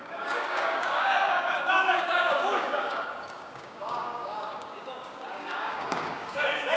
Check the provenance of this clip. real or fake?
fake